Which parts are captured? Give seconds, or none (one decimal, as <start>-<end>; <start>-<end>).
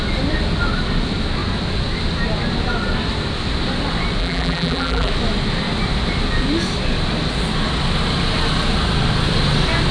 0.0-4.2; 5.1-9.9